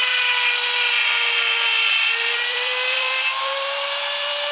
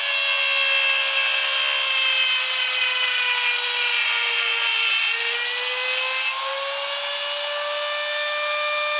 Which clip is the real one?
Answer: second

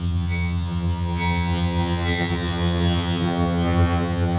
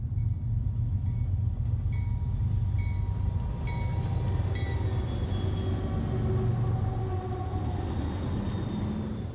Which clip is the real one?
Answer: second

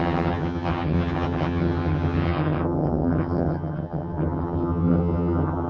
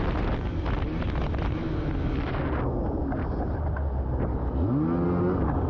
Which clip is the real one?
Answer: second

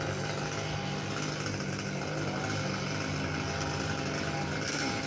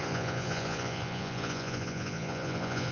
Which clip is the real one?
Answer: first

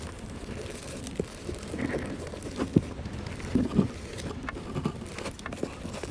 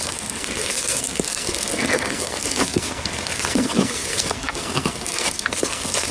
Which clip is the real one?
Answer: first